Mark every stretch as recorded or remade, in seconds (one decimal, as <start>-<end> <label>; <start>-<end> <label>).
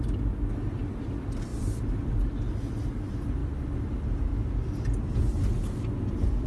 0.0-6.5 recorded